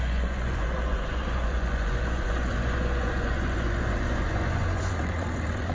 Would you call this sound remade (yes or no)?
yes